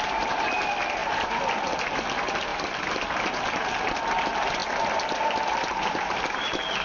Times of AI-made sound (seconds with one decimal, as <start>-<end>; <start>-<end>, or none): none